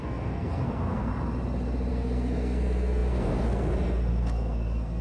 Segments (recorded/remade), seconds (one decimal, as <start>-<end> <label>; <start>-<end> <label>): 0.0-1.1 remade; 1.1-1.9 recorded; 1.9-5.0 remade